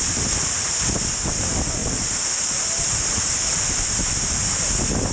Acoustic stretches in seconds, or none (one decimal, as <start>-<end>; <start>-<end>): 0.0-5.1